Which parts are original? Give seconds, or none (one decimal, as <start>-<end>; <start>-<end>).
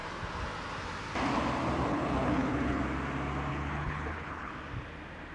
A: 0.0-1.9; 2.8-3.5; 4.5-5.3